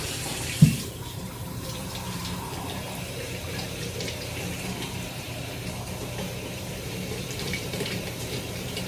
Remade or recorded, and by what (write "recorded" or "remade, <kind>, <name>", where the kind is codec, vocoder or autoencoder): remade, vocoder, BigVGAN v2